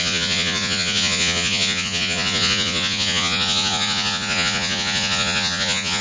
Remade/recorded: remade